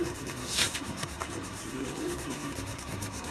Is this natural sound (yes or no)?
no